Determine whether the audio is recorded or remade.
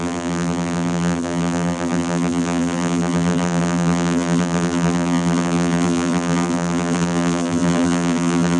remade